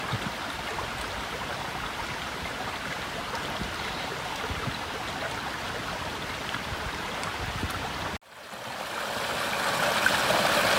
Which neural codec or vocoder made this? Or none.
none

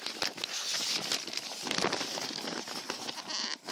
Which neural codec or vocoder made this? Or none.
none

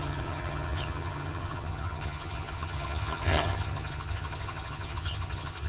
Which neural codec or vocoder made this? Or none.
vocoder, HiFi-GAN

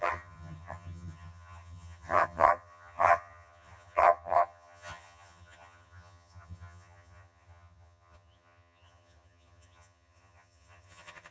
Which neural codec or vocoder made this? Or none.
vocoder, HiFi-GAN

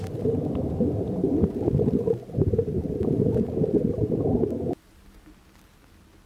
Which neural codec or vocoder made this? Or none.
vocoder, BigVGAN v2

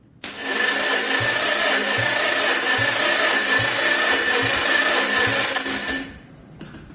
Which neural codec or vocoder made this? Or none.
none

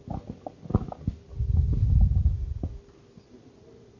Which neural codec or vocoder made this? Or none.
none